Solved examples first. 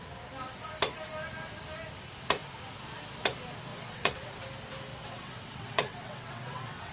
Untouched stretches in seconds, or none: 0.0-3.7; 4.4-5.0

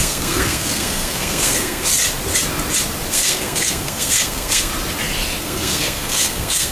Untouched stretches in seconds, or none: 1.9-3.1; 4.7-5.4

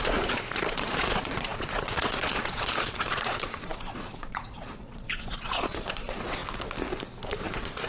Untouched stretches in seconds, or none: 6.4-7.3

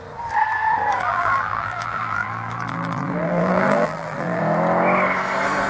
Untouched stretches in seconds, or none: 0.0-1.0; 4.4-5.7

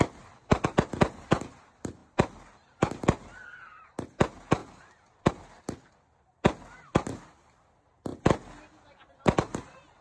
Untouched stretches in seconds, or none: 0.0-10.0

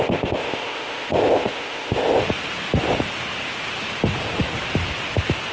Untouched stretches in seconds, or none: 2.2-5.5

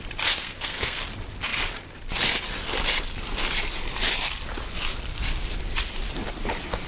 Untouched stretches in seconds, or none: 0.0-0.4; 1.0-6.9

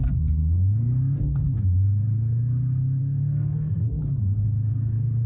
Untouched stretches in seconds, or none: 0.0-3.0; 4.0-5.3